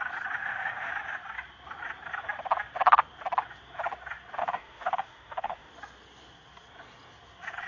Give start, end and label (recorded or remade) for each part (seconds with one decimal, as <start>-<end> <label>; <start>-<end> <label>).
0.0-0.4 recorded; 0.4-0.9 remade; 0.9-4.4 recorded; 4.4-5.7 remade; 5.7-7.7 recorded

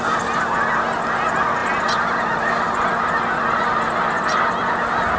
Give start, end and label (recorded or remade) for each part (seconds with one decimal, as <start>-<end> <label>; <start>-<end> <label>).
0.0-1.6 recorded; 1.6-4.7 remade; 4.7-5.2 recorded